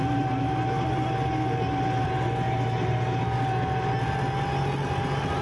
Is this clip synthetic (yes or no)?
no